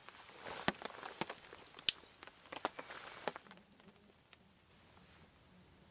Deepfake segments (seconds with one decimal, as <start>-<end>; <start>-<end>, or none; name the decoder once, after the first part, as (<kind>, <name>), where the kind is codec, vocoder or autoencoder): none